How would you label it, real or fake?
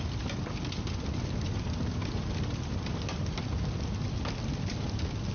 real